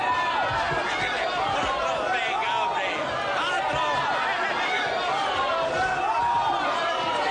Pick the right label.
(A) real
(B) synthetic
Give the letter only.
A